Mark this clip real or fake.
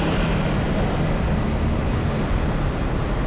real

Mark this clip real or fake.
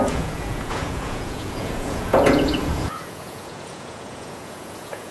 fake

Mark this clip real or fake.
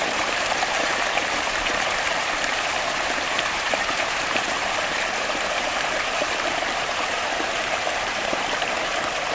fake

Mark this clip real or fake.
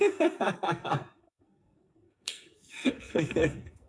fake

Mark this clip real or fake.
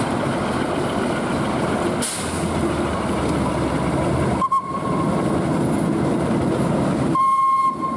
real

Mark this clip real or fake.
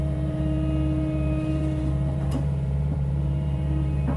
fake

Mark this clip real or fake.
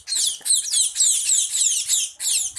real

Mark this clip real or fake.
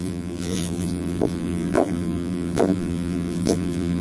fake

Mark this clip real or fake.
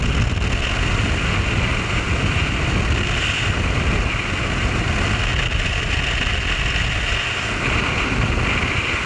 real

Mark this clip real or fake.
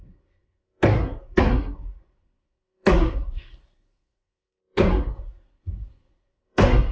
fake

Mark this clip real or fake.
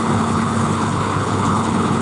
fake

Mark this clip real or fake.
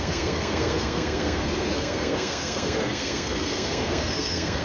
fake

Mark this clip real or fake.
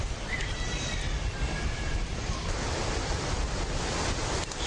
real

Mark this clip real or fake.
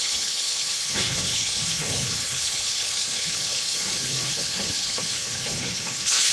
fake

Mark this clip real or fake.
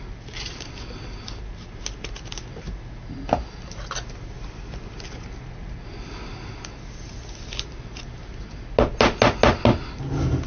real